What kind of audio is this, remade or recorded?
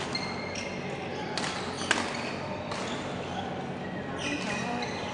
recorded